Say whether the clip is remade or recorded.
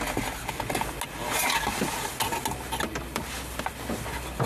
recorded